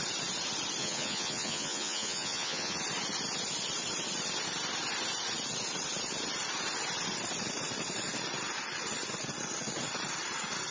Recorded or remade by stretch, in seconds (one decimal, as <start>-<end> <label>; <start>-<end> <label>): 0.0-0.8 recorded; 0.8-2.8 remade; 2.8-10.7 recorded